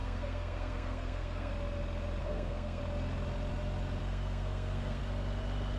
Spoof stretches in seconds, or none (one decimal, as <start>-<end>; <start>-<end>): 0.0-1.5; 2.2-2.8; 4.0-5.0